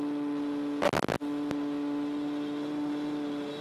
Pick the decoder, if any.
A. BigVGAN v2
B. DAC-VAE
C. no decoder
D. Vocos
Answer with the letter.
C